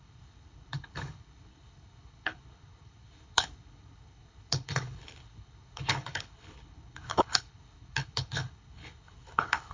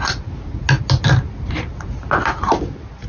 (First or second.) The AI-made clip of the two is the first